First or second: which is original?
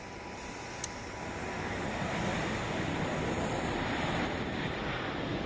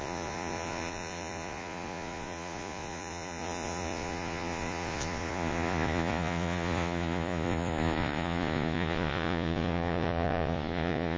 first